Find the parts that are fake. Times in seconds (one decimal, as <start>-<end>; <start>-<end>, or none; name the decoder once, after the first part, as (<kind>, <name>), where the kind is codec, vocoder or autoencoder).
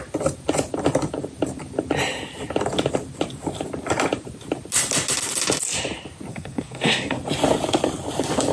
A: 6.3-7.2 (codec, SNAC)